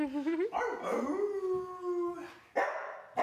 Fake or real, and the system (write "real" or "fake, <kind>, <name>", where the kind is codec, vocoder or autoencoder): real